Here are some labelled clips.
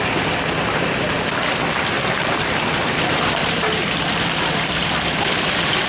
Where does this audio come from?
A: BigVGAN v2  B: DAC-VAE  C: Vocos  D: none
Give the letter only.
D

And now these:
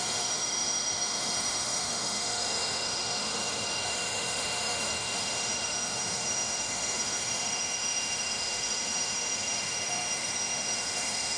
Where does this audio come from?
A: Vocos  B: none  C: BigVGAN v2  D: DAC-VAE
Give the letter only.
D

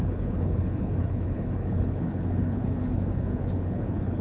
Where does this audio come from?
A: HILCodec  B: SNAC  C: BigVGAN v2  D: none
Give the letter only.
A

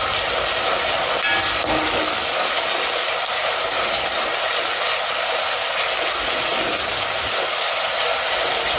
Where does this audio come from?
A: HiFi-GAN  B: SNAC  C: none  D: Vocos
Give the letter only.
C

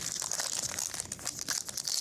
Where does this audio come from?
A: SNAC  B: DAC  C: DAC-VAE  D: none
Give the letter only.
D